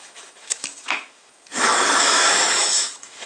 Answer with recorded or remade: remade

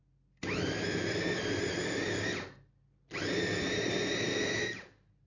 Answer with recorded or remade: recorded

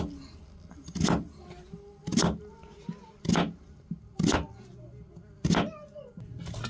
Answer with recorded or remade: recorded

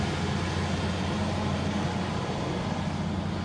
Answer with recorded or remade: recorded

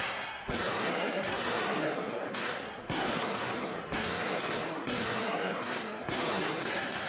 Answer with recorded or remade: remade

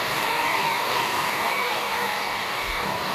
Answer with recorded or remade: remade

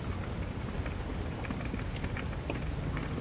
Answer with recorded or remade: recorded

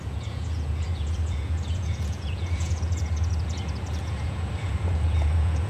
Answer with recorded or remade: remade